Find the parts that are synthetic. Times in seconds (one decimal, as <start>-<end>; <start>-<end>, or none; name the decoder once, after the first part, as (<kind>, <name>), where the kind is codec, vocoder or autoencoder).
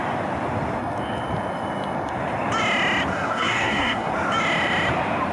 3.1-4.1 (codec, SNAC)